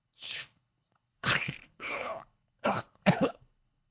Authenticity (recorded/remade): remade